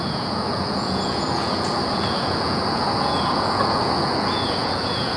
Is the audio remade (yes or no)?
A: yes